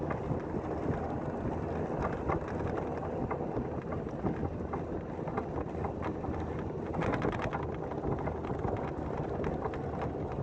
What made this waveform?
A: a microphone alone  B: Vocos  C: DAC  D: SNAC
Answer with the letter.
A